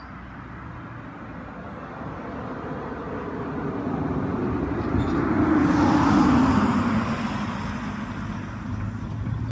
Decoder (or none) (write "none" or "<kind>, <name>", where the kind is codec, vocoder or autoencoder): none